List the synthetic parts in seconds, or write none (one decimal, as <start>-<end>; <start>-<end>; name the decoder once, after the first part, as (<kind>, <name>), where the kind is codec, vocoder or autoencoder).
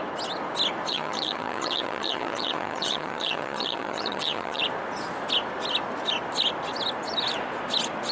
0.9-4.6 (vocoder, HiFi-GAN)